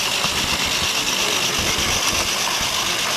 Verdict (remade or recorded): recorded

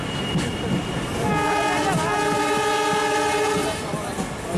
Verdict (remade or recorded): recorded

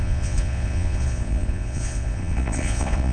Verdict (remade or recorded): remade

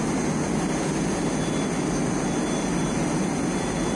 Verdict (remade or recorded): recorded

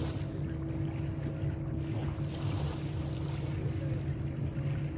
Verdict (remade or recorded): recorded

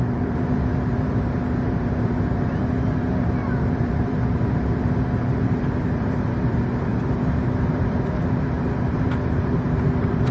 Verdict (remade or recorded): remade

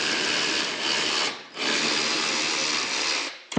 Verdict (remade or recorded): recorded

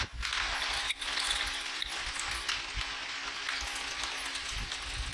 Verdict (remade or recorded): recorded